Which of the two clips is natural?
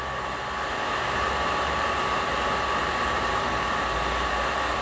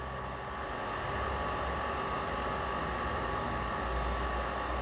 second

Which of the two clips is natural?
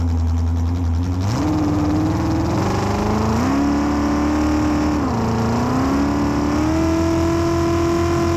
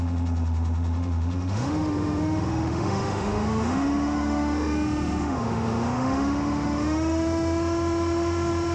first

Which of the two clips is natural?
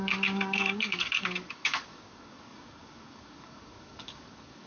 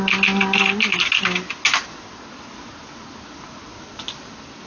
second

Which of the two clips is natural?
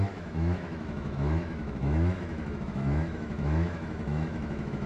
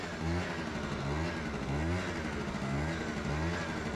second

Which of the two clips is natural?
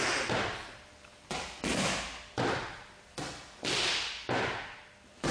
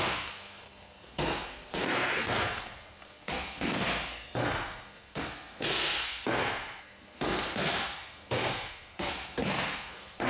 first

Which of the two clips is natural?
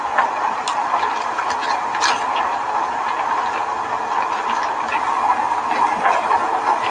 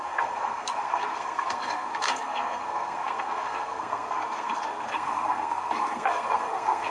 first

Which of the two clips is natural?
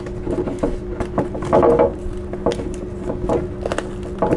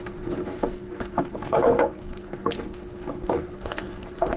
first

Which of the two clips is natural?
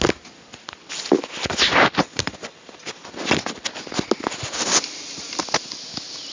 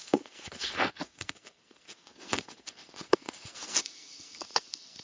first